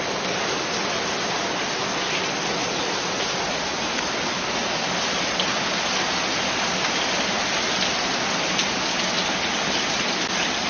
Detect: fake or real real